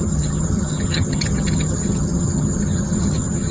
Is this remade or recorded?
remade